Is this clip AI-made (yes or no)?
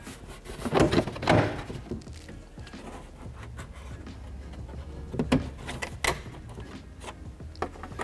no